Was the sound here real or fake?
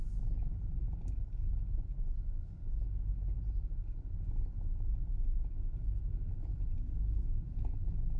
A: real